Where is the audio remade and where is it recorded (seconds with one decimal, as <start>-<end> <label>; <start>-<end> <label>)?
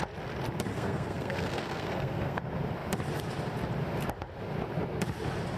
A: 0.0-0.7 recorded; 0.7-2.4 remade; 2.4-5.6 recorded